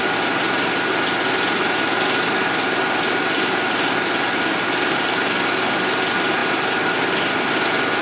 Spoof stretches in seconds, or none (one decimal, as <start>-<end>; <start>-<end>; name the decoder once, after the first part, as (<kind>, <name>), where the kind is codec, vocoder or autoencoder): none